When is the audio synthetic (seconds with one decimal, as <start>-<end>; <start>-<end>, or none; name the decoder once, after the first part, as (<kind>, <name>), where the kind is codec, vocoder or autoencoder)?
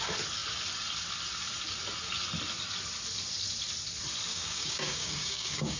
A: 4.3-5.8 (codec, DAC)